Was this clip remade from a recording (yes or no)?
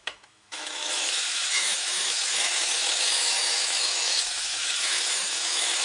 yes